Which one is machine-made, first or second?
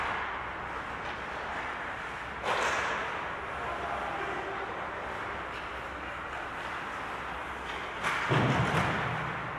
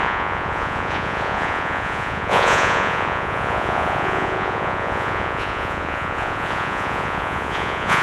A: second